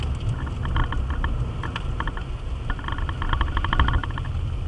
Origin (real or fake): real